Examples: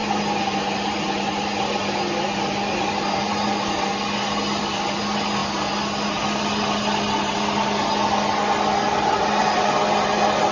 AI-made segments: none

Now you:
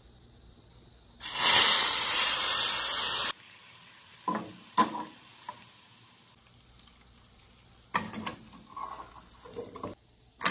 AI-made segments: none

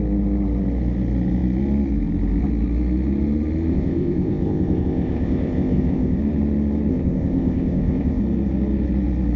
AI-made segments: 3.7-6.2 (codec, ZipCodec); 6.9-8.2

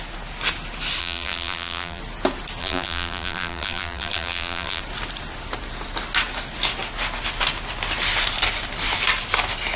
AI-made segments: 1.0-2.0 (vocoder, BigVGAN v2); 2.6-4.8

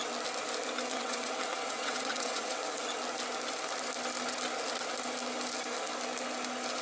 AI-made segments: 0.9-2.8 (vocoder, WaveNeXt)

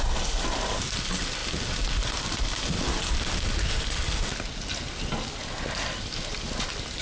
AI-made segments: none